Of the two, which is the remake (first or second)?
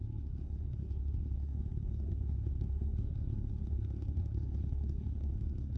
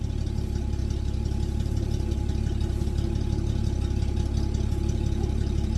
first